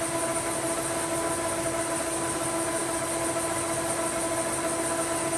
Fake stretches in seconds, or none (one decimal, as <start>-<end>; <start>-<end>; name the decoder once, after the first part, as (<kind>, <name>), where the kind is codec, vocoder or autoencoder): none